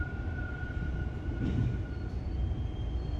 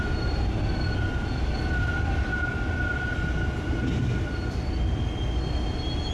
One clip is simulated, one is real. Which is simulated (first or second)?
first